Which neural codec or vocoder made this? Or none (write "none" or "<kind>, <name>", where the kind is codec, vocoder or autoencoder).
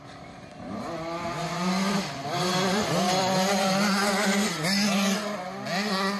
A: none